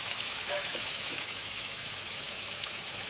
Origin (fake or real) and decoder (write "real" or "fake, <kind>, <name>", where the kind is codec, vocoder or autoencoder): fake, autoencoder, DAC-VAE